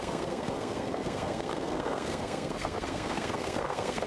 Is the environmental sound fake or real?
fake